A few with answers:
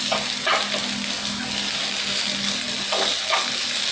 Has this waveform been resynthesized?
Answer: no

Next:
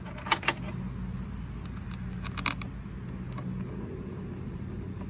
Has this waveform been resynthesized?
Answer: no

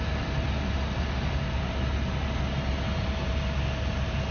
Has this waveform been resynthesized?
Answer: no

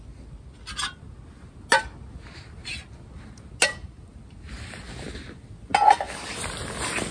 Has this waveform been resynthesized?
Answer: no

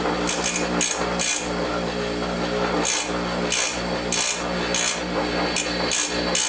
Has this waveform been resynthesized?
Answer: no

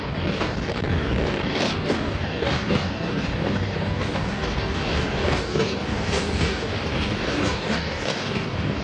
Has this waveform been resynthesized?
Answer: yes